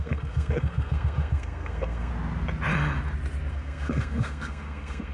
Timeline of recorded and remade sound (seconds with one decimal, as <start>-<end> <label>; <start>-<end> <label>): 0.0-2.1 remade; 2.1-3.5 recorded; 3.5-5.1 remade